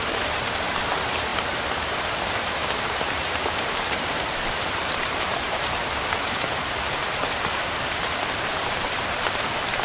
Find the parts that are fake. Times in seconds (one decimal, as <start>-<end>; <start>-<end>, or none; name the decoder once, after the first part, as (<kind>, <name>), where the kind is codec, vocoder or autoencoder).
0.0-1.3 (vocoder, BigVGAN v2); 2.9-9.8